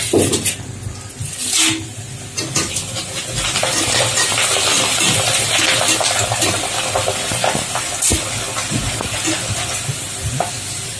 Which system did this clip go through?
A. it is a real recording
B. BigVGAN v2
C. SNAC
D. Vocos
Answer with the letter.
A